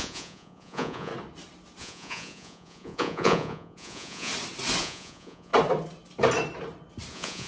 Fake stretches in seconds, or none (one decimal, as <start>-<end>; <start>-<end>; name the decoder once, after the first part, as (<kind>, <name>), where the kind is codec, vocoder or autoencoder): 0.0-1.1 (vocoder, Vocos); 1.8-4.3; 4.8-5.5; 7.1-7.5